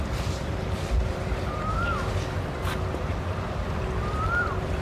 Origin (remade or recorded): remade